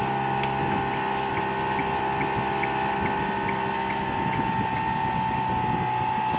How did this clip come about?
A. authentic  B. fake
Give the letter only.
A